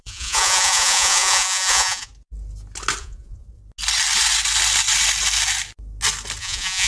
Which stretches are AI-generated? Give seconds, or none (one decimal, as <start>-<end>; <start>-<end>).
0.0-2.1; 3.0-3.6; 6.4-6.9